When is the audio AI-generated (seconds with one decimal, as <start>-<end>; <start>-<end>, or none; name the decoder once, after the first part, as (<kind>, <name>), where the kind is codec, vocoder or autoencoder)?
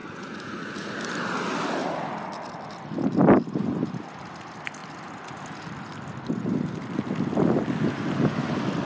0.0-0.9 (vocoder, Vocos)